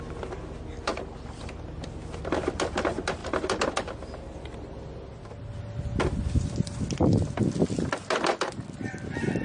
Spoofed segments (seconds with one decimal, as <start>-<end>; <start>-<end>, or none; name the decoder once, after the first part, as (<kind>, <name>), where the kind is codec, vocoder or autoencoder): 0.9-1.4 (vocoder, BigVGAN v2)